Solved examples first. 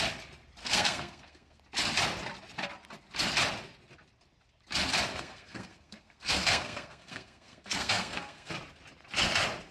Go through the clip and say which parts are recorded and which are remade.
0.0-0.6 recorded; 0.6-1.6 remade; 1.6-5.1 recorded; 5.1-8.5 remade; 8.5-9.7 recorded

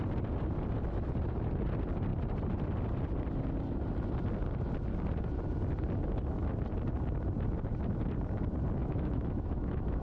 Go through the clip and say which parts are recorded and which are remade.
0.0-8.8 recorded; 8.8-10.0 remade

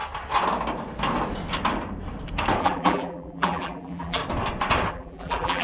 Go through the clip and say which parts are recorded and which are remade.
0.0-2.6 recorded; 2.6-4.2 remade; 4.2-4.9 recorded; 4.9-5.6 remade

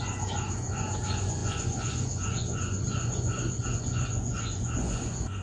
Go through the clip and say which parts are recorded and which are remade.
0.0-5.4 remade

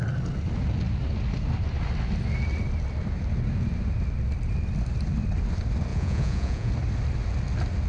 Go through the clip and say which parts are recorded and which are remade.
0.0-5.9 recorded; 5.9-6.7 remade; 6.7-7.9 recorded

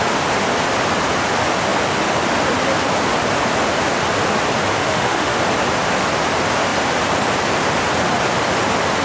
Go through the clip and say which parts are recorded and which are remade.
0.0-4.8 recorded; 4.8-5.4 remade; 5.4-9.0 recorded

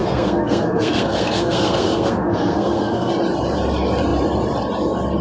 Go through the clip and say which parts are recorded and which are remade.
0.0-3.1 remade; 3.1-5.2 recorded

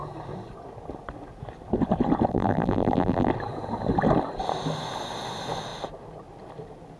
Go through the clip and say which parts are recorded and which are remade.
0.0-2.3 recorded; 2.3-3.3 remade; 3.3-7.0 recorded